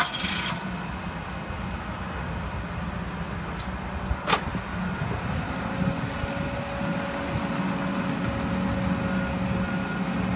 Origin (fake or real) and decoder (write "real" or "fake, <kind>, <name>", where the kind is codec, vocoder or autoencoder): real